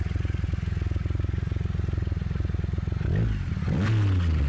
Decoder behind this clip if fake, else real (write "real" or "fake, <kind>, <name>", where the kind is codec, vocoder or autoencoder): real